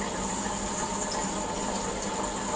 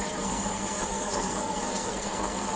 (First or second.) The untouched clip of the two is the first